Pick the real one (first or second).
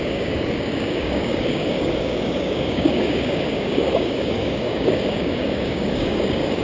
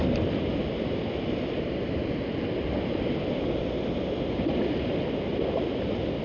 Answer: second